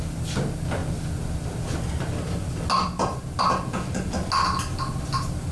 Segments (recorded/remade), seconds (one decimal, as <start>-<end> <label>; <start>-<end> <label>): 0.0-5.5 recorded

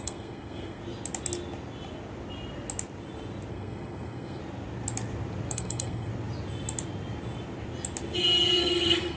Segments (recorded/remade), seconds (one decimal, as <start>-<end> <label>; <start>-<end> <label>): 0.0-0.8 remade; 0.8-3.5 recorded; 3.5-4.4 remade; 4.4-5.5 recorded; 5.5-6.1 remade; 6.1-8.6 recorded; 8.6-9.2 remade